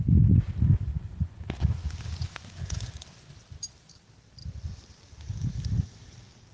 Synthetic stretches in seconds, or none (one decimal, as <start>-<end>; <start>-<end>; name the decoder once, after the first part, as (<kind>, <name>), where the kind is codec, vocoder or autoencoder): 0.9-1.5 (vocoder, Vocos); 2.2-3.3